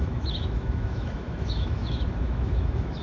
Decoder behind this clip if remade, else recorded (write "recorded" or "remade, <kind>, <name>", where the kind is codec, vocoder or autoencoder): remade, autoencoder, DAC-VAE